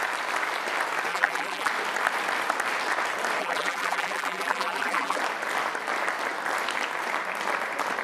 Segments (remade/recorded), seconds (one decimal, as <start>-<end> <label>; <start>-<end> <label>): 0.0-1.1 recorded; 1.1-1.7 remade; 1.7-3.4 recorded; 3.4-5.2 remade; 5.2-8.0 recorded